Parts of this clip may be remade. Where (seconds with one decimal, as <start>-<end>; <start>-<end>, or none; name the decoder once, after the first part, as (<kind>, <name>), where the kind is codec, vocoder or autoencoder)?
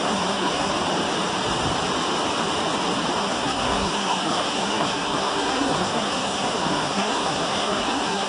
0.0-0.7 (codec, SNAC); 3.2-8.3